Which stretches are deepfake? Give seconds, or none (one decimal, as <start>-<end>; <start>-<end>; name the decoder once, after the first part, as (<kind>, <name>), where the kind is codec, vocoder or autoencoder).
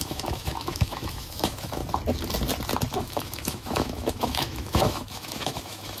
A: 0.0-1.8 (autoencoder, DAC-VAE); 3.0-6.0